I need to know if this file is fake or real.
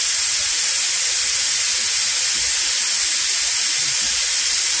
real